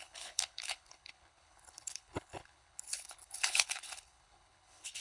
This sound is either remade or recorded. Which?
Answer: remade